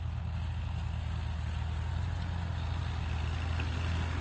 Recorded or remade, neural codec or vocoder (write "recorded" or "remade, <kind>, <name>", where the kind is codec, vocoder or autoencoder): recorded